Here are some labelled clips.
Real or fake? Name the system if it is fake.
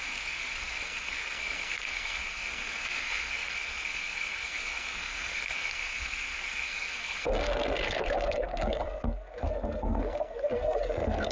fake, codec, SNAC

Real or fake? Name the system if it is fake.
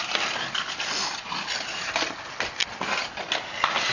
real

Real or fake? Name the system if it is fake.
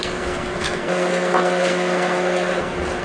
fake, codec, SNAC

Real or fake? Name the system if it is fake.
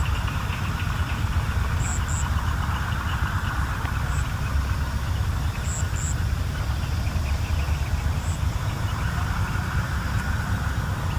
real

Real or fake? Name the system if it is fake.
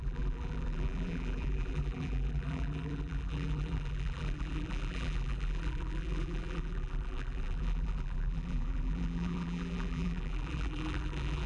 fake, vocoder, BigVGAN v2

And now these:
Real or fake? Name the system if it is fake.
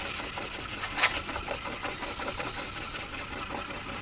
real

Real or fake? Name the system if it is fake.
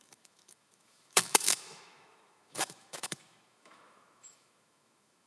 fake, autoencoder, DAC-VAE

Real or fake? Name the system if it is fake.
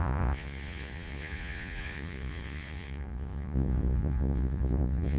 fake, vocoder, Vocos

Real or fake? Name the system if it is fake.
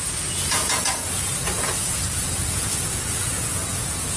fake, vocoder, Vocos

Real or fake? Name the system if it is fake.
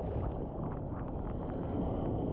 real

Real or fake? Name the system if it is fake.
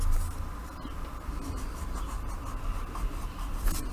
real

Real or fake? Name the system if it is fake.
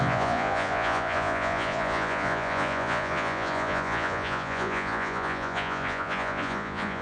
fake, vocoder, Vocos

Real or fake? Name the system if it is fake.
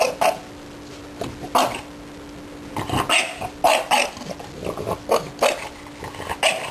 real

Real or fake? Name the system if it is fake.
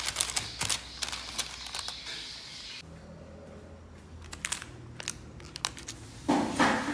real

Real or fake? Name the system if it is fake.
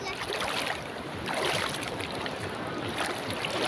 real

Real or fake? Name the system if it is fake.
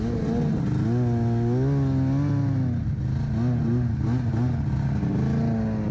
real